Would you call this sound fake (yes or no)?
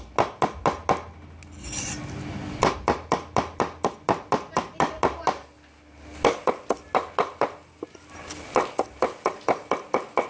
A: no